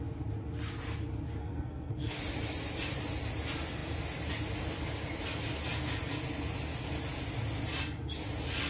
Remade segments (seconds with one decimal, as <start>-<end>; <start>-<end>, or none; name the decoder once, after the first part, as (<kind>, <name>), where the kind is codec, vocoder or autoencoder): 1.4-2.2 (codec, SNAC)